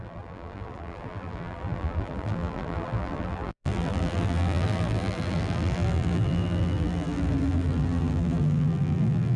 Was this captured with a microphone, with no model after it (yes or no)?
no